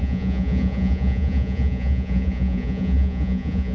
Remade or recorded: remade